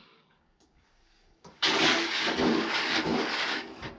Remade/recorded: remade